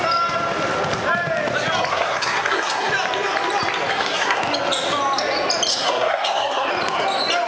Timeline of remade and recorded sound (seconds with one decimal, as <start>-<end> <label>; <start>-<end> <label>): 0.0-1.9 recorded; 1.9-2.9 remade; 2.9-3.9 recorded; 3.9-4.4 remade; 4.4-5.7 recorded; 5.7-6.7 remade; 6.7-7.5 recorded